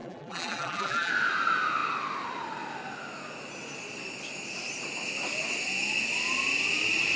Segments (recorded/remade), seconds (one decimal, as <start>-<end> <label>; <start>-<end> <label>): 0.0-1.1 remade; 1.1-7.2 recorded